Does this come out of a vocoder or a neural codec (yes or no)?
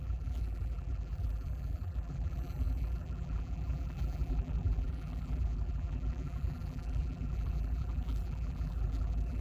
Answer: yes